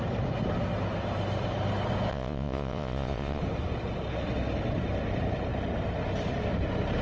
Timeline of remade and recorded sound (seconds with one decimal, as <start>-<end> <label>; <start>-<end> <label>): 0.0-2.1 recorded; 2.1-3.4 remade; 3.4-7.0 recorded